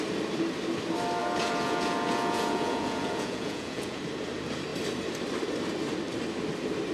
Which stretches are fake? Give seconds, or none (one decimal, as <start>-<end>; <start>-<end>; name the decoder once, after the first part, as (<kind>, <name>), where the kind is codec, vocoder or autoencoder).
1.2-4.0 (vocoder, Vocos)